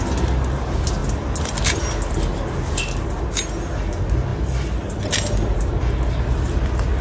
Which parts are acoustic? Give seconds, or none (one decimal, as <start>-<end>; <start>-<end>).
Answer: 0.0-7.0